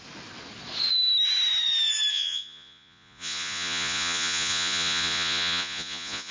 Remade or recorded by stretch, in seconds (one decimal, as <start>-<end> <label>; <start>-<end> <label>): 0.0-2.1 recorded; 2.1-6.3 remade

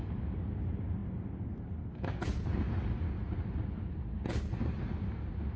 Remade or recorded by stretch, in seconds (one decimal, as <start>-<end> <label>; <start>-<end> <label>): 0.0-5.6 recorded